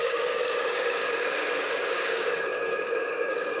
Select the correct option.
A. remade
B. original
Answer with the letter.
A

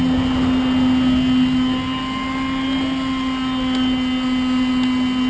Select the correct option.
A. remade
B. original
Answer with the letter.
B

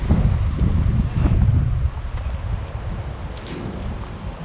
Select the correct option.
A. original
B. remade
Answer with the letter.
A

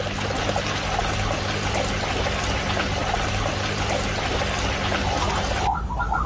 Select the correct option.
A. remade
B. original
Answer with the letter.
B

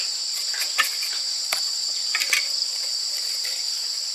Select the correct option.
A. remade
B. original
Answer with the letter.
A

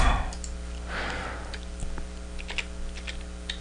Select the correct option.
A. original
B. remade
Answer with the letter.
A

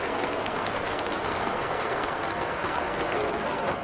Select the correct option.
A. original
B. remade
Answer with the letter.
B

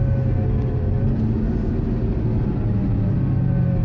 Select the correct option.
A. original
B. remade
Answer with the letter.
A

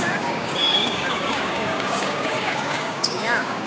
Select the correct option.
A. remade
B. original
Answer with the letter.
A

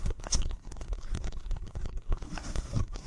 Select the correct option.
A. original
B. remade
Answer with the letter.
B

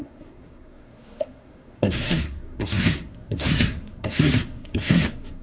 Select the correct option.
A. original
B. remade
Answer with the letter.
B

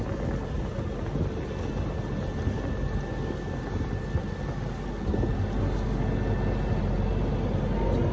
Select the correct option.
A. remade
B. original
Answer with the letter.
B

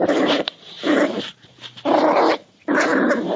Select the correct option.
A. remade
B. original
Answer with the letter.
A